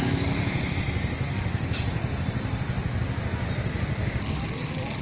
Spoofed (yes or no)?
no